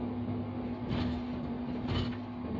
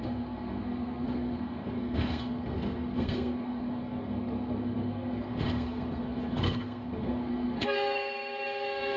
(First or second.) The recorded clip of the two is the first